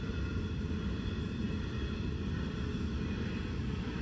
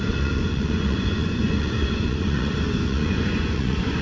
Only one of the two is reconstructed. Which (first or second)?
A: second